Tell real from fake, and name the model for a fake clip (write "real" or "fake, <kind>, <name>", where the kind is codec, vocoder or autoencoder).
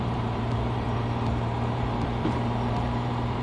fake, vocoder, BigVGAN v2